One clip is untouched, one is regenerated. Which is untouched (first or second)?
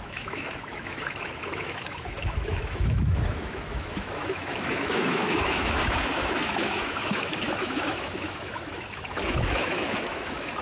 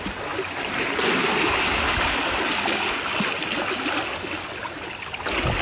second